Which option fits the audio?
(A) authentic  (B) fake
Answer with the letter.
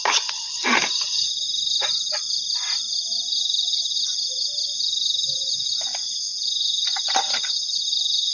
A